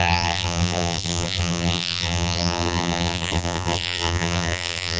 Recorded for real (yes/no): no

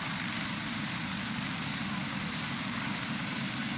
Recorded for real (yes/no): yes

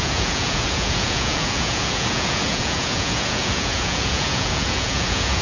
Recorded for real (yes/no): no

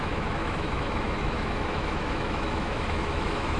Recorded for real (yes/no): no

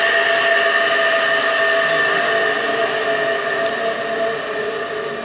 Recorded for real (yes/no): yes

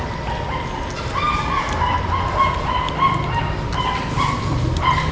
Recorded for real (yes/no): yes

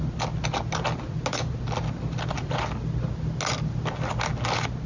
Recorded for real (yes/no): yes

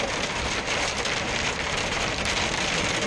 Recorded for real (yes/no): yes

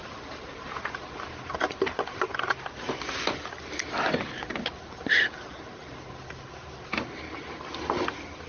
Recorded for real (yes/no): yes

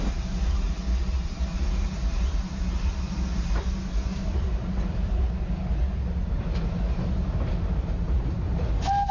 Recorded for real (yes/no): yes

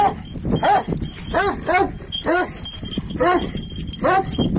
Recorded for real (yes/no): yes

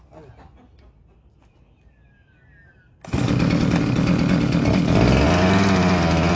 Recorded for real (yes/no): yes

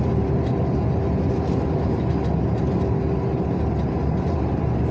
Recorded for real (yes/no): yes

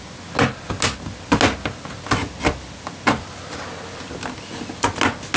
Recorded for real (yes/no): yes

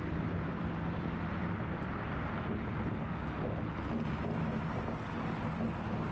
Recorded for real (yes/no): yes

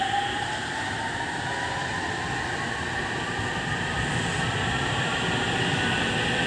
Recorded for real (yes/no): yes